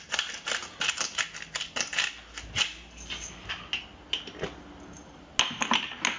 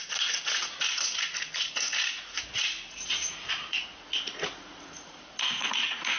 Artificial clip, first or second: second